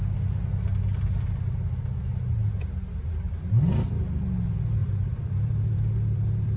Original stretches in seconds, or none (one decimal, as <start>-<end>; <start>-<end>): 0.0-4.8